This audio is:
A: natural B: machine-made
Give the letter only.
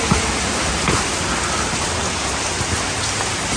A